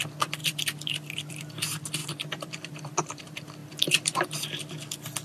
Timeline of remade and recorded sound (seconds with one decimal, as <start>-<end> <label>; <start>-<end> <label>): 0.0-0.4 recorded; 0.4-1.4 remade; 1.4-2.0 recorded; 2.0-3.2 remade; 3.2-3.6 recorded; 3.6-4.2 remade; 4.2-5.2 recorded